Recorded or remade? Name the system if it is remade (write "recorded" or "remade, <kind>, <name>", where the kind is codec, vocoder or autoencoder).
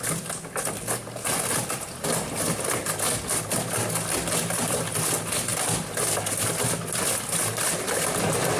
recorded